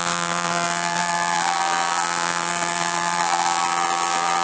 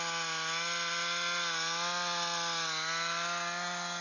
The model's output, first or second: first